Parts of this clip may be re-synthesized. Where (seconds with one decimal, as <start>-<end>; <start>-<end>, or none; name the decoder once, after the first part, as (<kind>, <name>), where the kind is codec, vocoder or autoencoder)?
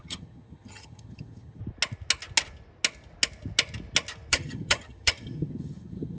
0.0-1.6 (vocoder, HiFi-GAN); 4.3-6.2